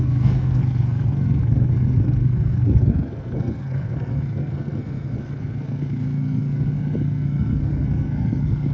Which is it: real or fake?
fake